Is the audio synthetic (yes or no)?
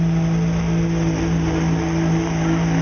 no